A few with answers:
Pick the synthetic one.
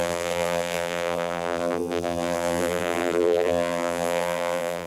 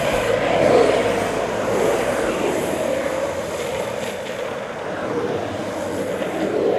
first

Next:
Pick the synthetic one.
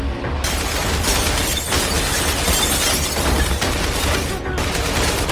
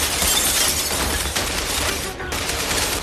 second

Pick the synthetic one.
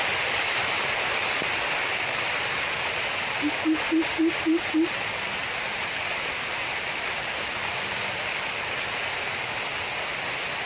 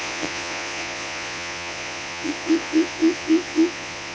second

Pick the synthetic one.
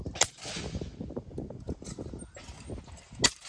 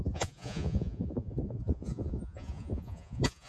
second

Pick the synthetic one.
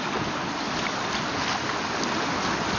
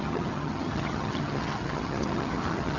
second